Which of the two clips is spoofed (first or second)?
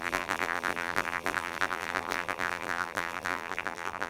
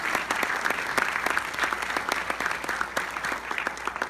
first